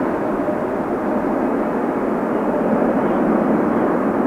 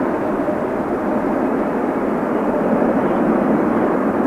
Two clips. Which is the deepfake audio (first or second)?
second